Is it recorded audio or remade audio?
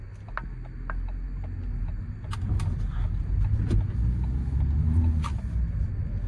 recorded